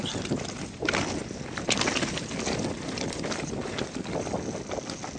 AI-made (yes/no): no